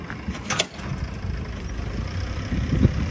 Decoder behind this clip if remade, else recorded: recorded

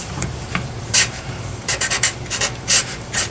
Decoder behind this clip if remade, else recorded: remade, vocoder, BigVGAN v2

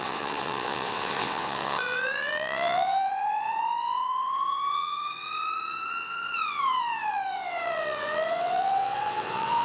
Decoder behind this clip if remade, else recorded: remade, vocoder, WaveNeXt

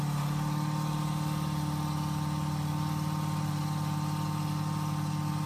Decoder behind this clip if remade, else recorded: recorded